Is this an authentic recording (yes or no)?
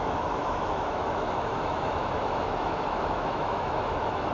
no